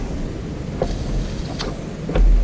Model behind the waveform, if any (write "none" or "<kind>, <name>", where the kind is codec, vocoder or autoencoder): none